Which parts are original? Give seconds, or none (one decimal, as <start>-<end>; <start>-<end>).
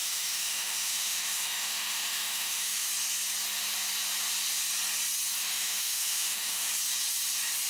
2.9-5.4; 6.7-7.7